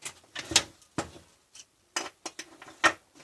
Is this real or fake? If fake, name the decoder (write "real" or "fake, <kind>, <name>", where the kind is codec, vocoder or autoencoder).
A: real